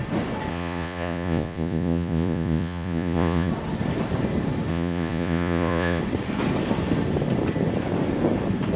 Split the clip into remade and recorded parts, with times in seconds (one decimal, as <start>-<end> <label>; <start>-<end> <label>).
0.0-0.5 recorded; 0.5-3.5 remade; 3.5-4.7 recorded; 4.7-6.0 remade; 6.0-8.8 recorded